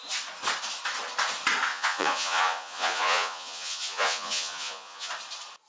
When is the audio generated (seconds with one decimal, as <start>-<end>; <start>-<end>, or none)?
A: 1.7-5.1